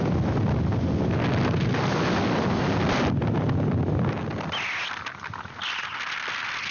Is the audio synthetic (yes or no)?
no